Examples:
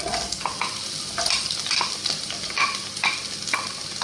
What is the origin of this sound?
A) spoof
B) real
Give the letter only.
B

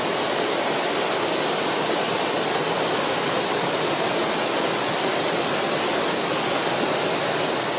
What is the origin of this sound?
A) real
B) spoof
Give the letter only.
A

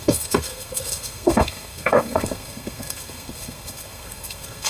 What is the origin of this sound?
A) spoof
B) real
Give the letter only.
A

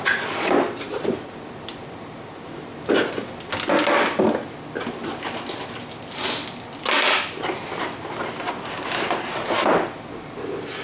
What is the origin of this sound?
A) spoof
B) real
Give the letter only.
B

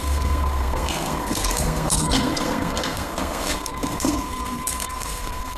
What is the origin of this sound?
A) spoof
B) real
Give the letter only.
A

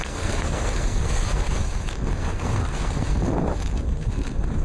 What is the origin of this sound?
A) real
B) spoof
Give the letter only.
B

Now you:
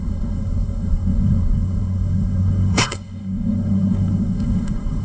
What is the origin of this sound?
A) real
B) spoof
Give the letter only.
B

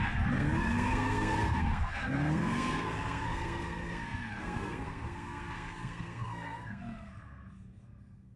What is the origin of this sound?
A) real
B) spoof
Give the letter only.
B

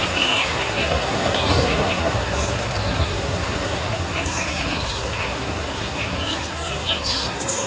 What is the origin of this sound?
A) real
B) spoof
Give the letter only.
B